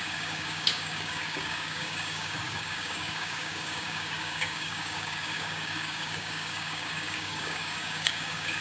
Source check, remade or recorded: remade